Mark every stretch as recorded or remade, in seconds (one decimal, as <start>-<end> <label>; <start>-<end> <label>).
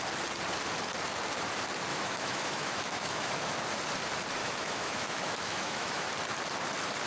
0.0-1.9 recorded; 1.9-3.5 remade; 3.5-4.4 recorded; 4.4-6.1 remade; 6.1-7.1 recorded